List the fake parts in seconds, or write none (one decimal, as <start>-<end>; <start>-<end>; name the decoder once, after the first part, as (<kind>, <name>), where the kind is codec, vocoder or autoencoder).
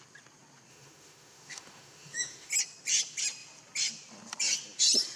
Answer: 0.7-2.5 (autoencoder, DAC-VAE)